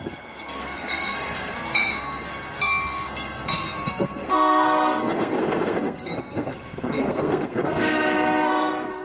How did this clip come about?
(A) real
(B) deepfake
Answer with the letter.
B